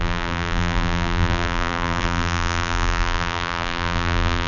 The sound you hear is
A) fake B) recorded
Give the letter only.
A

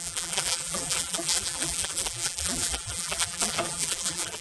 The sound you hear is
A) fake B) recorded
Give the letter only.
A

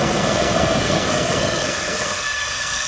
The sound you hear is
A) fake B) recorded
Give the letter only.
A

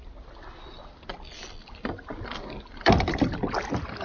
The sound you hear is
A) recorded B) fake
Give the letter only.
A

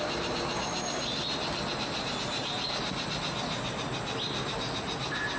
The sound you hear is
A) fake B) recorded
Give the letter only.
B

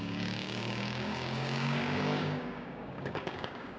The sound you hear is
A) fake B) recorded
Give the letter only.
A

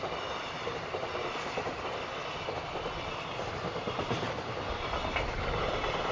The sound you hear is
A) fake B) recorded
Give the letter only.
A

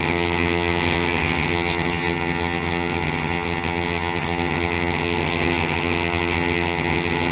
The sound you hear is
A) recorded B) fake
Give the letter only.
B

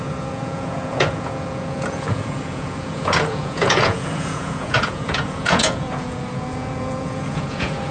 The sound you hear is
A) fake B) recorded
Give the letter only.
A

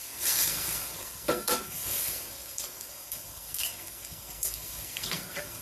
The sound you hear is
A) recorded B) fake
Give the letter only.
B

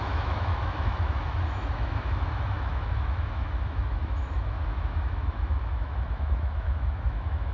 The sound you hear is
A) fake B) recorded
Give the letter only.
A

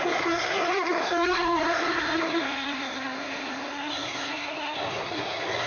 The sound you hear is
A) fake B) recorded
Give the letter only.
A